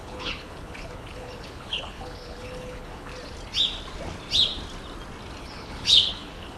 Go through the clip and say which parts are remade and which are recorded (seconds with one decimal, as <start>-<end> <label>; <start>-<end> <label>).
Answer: 0.0-3.1 remade; 3.1-5.4 recorded; 5.4-6.6 remade